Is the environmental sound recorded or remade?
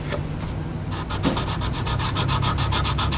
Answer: recorded